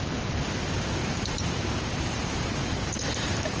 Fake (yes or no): yes